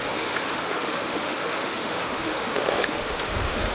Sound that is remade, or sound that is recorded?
remade